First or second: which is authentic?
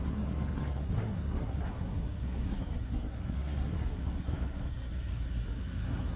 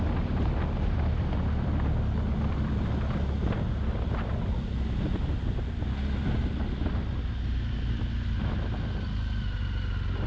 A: second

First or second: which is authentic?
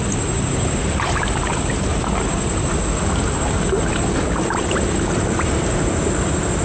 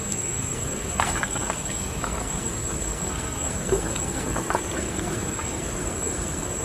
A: first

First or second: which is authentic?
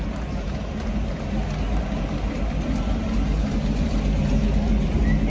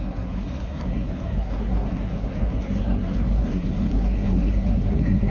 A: first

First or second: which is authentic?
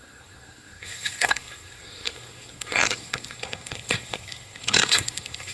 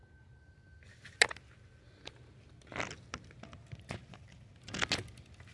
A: second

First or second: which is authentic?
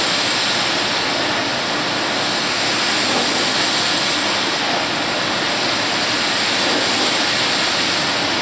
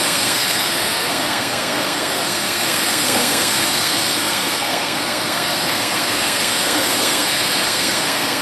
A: first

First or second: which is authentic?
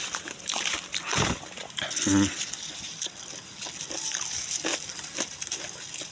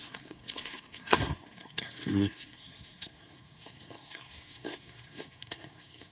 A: first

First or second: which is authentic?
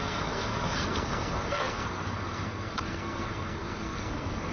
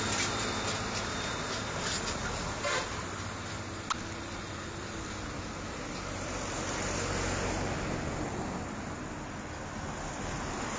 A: second